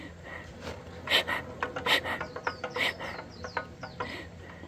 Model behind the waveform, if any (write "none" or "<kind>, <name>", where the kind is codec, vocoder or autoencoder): none